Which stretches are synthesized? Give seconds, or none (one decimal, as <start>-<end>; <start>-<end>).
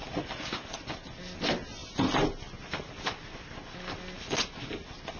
none